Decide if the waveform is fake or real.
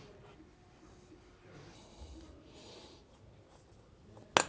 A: real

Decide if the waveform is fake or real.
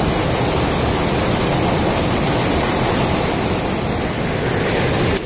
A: real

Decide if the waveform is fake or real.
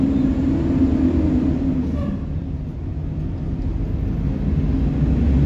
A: real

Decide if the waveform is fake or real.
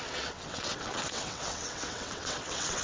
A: fake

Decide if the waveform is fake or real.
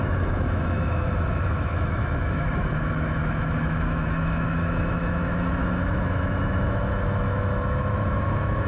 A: fake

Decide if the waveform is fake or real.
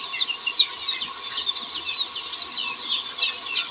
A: real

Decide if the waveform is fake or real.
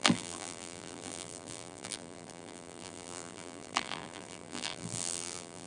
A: fake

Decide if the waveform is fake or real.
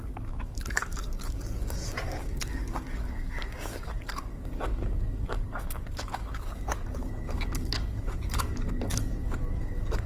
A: fake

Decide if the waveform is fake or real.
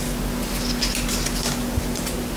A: real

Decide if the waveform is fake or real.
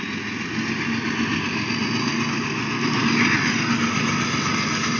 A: real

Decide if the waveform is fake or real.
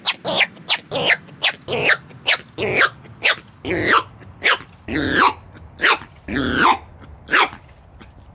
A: real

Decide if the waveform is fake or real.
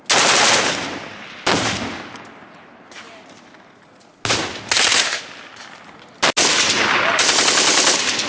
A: real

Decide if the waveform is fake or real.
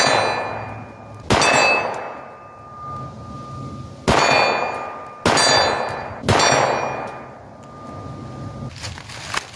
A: real